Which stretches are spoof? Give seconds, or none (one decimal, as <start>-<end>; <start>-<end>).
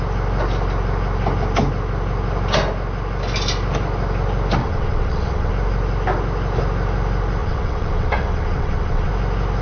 4.6-5.5; 7.4-9.1